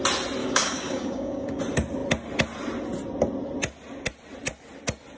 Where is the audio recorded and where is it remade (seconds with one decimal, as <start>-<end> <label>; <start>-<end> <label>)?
0.0-0.4 recorded; 0.4-1.6 remade; 1.6-5.2 recorded